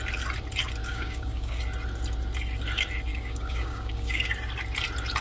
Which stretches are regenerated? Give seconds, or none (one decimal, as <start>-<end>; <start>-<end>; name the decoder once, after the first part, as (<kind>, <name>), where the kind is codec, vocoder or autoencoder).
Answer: 0.8-1.6 (codec, DAC); 3.1-4.3